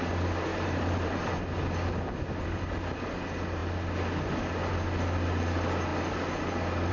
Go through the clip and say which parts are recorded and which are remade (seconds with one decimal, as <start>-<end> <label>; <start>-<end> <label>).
0.0-0.5 recorded; 0.5-1.3 remade; 1.3-6.9 recorded